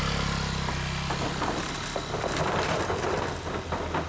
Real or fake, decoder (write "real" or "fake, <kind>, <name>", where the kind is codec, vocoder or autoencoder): real